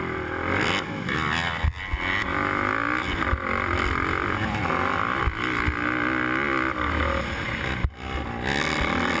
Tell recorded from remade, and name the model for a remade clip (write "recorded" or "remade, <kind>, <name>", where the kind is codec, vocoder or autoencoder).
recorded